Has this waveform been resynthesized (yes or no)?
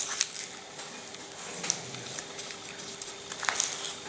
no